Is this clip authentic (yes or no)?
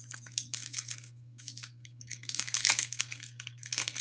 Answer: no